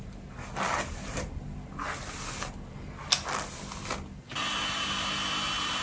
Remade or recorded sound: recorded